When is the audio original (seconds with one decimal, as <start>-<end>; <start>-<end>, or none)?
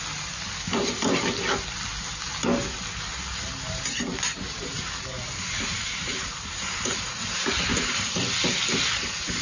0.0-3.1; 8.1-9.4